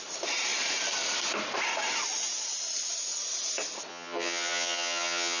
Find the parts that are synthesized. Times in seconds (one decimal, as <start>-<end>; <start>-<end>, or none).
3.9-5.4